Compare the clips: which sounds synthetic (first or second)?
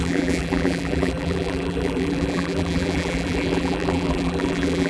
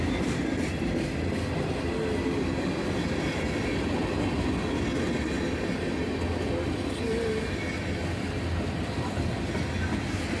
first